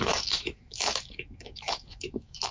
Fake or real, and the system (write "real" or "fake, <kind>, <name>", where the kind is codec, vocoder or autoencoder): fake, autoencoder, DAC-VAE